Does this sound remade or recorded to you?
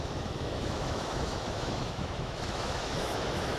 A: remade